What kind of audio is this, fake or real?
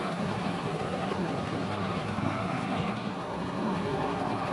fake